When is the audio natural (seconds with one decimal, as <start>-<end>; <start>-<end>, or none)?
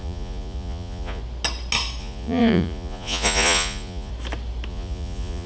1.2-2.0; 4.1-4.7